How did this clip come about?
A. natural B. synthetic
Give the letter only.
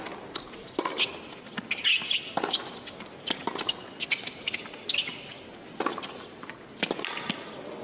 A